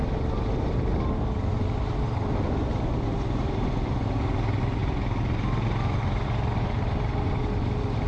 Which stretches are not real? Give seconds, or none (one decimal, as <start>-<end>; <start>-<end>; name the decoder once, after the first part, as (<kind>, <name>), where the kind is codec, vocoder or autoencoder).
none